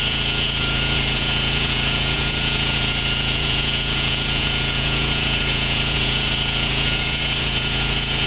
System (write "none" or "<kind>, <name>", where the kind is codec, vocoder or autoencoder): vocoder, Vocos